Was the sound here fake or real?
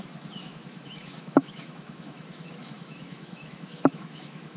fake